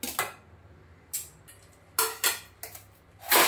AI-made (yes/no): no